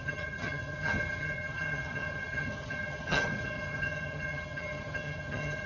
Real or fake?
fake